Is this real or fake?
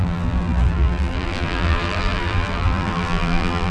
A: fake